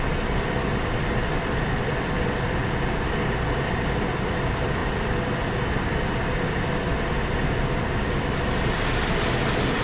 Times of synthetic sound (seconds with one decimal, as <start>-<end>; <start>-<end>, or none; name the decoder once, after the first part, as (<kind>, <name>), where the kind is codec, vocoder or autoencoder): none